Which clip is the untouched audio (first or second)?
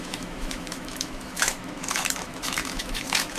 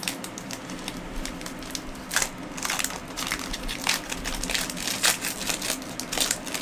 second